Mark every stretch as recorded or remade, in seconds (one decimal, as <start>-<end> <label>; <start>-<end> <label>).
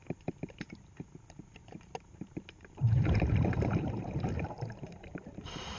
0.0-1.6 recorded; 1.6-4.2 remade; 4.2-5.3 recorded; 5.3-5.8 remade